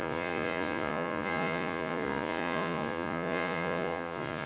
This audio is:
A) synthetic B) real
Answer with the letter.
A